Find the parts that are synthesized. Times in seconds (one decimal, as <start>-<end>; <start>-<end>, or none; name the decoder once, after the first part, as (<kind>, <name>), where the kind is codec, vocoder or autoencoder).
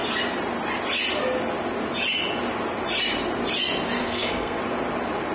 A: 4.0-4.6 (codec, SNAC)